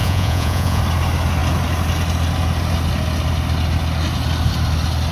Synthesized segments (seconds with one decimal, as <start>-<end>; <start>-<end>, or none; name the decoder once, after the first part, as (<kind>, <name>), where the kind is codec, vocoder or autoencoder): 0.0-0.8 (vocoder, Vocos)